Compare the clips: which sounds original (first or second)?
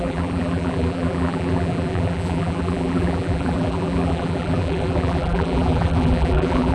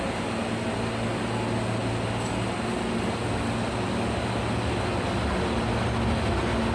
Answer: second